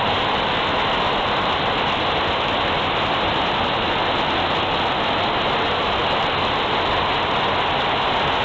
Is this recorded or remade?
recorded